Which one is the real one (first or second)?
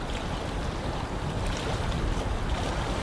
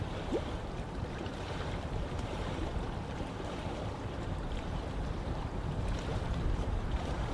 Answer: first